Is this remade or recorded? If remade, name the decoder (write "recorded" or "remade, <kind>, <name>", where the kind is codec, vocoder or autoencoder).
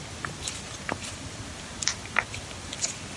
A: recorded